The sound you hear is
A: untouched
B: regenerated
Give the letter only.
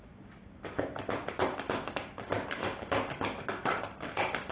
A